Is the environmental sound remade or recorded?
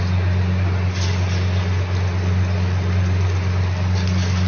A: recorded